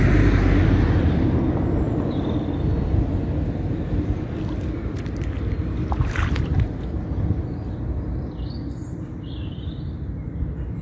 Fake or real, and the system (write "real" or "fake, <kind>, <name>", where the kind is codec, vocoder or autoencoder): real